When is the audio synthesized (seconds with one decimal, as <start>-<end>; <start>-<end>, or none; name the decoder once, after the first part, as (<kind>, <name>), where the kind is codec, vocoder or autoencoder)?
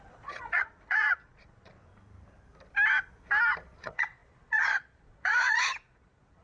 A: 0.0-1.9 (vocoder, Vocos); 3.8-6.4